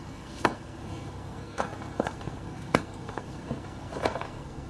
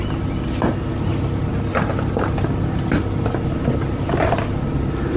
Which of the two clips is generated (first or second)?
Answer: first